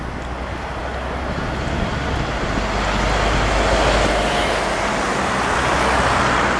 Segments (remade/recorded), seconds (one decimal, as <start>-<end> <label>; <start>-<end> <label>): 0.0-6.6 recorded